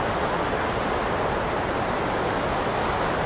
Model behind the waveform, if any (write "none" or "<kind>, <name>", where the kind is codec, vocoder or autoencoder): none